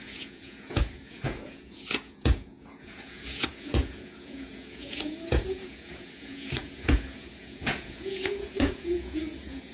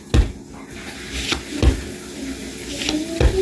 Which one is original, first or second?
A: second